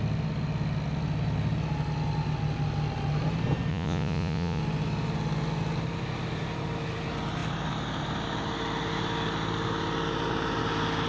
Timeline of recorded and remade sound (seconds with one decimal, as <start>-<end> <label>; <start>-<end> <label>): 0.0-3.7 recorded; 3.7-4.6 remade; 4.6-11.1 recorded